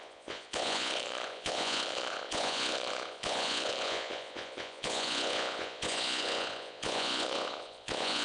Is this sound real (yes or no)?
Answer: no